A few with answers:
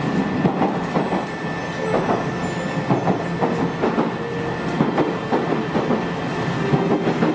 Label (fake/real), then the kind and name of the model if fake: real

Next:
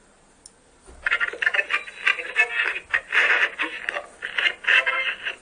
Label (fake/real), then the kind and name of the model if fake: real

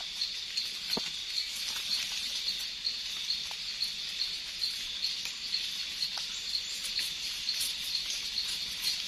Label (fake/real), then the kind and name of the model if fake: real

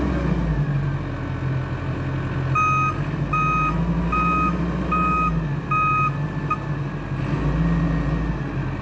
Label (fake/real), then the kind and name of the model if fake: real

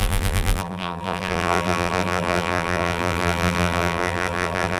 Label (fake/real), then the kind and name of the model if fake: fake, vocoder, BigVGAN v2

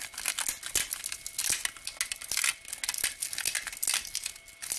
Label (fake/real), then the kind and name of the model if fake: real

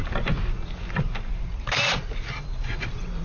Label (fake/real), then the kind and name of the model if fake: real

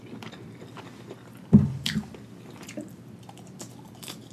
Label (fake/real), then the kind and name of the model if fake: fake, vocoder, BigVGAN v2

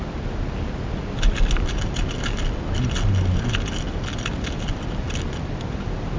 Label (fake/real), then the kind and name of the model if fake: real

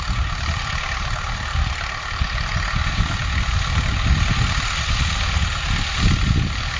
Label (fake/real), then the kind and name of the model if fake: real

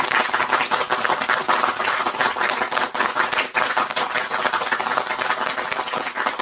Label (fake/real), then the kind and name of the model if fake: fake, vocoder, BigVGAN v2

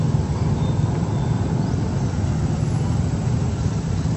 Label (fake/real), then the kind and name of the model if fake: real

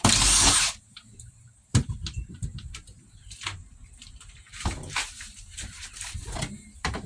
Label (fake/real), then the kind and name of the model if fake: fake, vocoder, BigVGAN v2